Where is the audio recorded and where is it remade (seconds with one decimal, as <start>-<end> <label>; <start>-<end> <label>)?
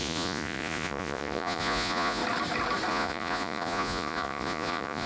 0.0-2.2 remade; 2.2-2.9 recorded; 2.9-5.1 remade